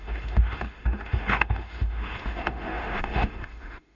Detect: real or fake fake